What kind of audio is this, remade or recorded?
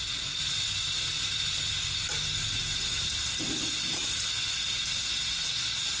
recorded